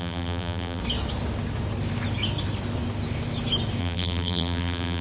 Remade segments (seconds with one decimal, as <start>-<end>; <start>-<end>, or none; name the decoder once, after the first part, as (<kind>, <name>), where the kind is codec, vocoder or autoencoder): 0.0-0.8 (vocoder, BigVGAN v2); 3.8-5.0